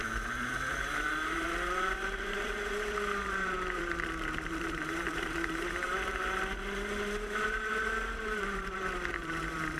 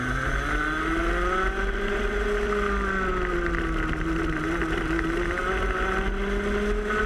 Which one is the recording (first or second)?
second